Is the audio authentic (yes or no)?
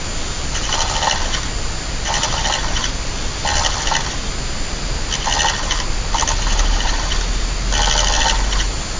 yes